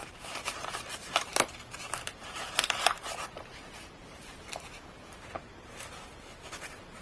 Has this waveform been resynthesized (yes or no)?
yes